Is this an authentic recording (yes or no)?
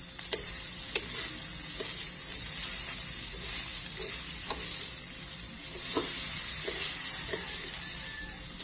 yes